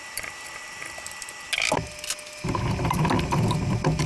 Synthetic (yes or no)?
no